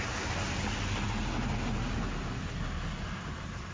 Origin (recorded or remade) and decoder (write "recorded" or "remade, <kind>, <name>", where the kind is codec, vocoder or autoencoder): recorded